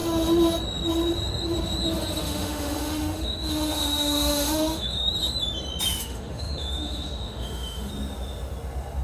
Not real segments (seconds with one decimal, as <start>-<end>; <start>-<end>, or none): 2.2-5.1; 6.0-7.9